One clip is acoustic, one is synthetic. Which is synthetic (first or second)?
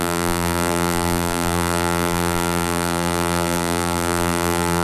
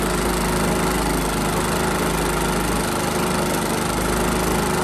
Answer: first